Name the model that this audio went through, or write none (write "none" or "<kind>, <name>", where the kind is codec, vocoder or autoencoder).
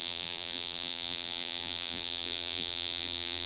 vocoder, BigVGAN v2